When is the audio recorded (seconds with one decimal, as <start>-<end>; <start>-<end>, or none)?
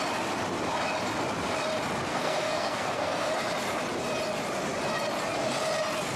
0.0-2.1; 3.3-6.2